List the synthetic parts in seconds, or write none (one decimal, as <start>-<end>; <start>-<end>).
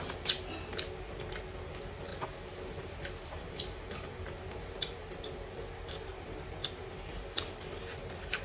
2.1-5.5